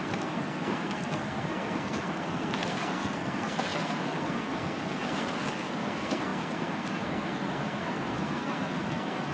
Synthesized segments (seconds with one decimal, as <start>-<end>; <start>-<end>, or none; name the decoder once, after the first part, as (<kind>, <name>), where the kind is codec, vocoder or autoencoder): 0.0-9.3 (codec, SNAC)